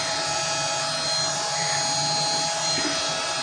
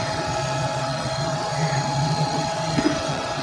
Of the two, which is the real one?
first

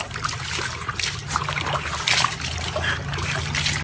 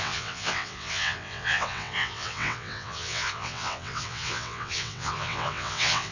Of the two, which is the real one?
first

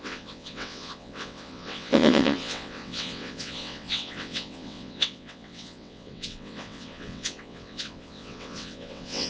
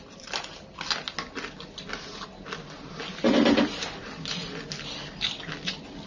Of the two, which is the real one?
second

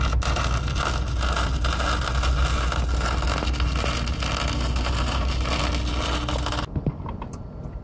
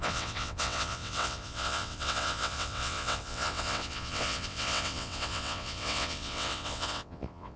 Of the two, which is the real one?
first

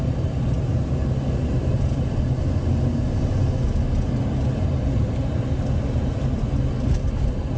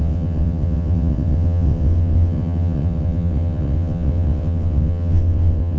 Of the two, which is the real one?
first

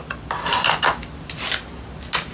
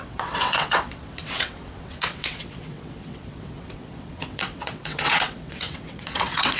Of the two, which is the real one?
first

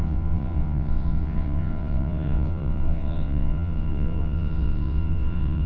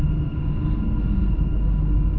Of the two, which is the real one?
second